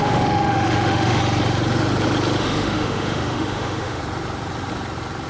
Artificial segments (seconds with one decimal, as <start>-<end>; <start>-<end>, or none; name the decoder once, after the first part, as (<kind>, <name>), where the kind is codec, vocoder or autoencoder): 0.0-1.2 (autoencoder, DAC-VAE); 2.4-4.0